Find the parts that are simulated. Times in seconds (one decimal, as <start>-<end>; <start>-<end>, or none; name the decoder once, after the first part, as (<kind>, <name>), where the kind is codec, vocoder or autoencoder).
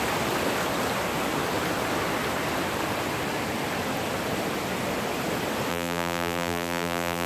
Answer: 5.7-7.3 (vocoder, BigVGAN v2)